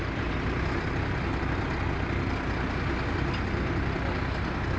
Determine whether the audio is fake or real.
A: real